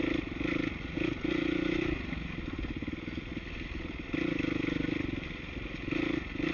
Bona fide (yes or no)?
yes